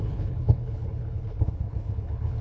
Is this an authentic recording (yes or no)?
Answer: no